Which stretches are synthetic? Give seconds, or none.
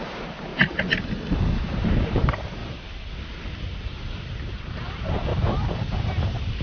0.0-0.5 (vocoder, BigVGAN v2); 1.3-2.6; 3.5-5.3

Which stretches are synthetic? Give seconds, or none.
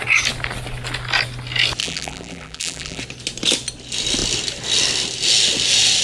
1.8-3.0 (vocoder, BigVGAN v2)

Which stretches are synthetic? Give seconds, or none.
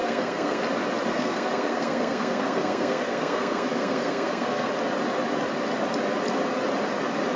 0.0-0.6 (codec, SNAC); 1.1-4.7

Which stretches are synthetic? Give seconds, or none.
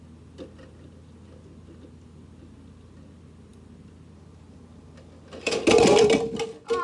none